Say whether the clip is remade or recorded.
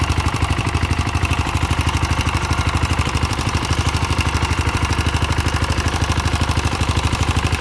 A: remade